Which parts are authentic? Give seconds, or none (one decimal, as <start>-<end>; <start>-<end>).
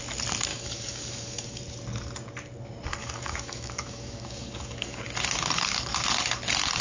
0.0-0.5; 1.6-3.0; 5.0-6.8